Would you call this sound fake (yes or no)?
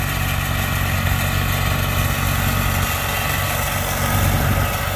no